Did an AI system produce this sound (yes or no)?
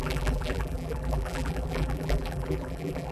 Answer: yes